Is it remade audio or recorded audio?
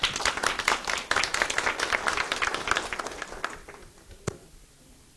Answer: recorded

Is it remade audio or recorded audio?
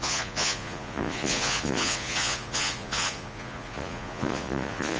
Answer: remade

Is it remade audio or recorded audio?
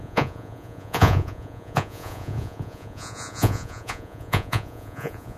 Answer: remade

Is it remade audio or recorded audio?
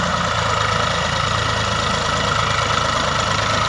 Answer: recorded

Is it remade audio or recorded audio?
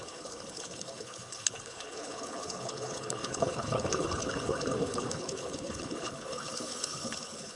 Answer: remade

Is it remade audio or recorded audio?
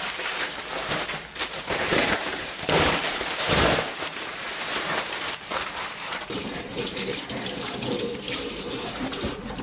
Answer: remade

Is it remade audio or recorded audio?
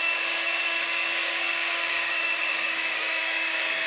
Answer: remade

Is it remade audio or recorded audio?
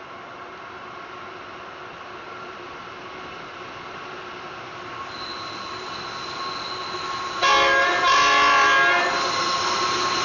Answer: recorded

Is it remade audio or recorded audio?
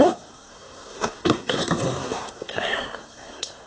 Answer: remade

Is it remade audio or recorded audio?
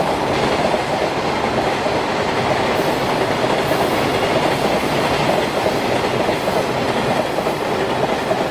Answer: recorded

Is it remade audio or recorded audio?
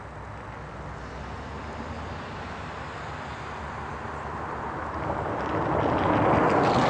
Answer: recorded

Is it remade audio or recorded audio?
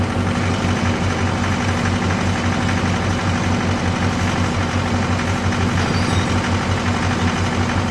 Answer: recorded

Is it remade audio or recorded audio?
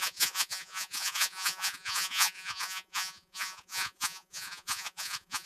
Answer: remade